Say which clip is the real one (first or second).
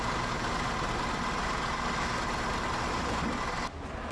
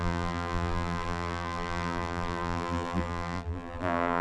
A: first